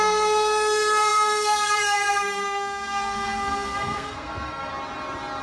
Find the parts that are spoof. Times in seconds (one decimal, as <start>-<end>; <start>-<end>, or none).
0.0-4.7